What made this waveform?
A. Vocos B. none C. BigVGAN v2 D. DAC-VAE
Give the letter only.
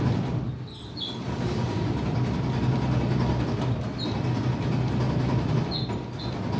B